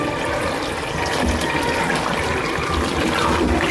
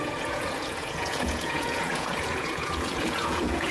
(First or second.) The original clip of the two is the first